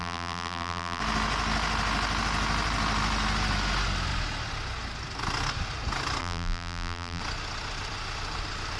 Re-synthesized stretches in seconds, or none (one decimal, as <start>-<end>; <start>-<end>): 0.0-1.0; 6.2-7.2